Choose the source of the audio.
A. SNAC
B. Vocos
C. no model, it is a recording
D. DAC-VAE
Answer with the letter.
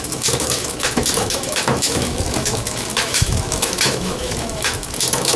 D